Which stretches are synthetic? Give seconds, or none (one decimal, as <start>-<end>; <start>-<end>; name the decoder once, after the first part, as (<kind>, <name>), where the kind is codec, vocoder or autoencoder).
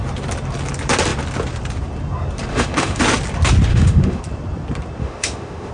2.5-3.0 (autoencoder, DAC-VAE); 3.7-4.2; 5.0-5.7